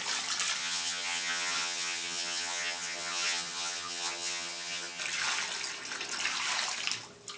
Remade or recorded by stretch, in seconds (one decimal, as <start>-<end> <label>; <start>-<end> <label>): 0.0-0.6 recorded; 0.6-5.0 remade; 5.0-7.4 recorded